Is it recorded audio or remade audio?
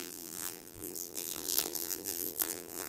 remade